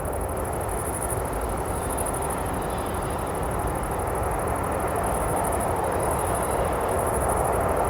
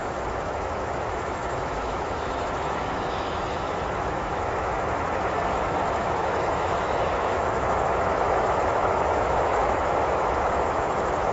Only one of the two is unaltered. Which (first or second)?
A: first